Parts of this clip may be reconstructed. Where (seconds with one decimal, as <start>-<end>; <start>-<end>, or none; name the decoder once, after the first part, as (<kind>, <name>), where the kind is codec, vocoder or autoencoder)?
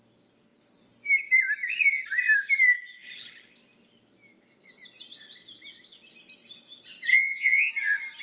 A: 7.1-7.7 (vocoder, Vocos)